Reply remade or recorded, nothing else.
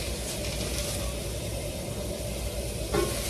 recorded